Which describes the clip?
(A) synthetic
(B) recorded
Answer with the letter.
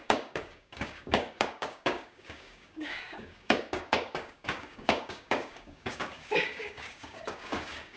A